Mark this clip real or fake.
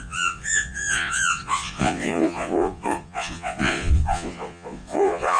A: fake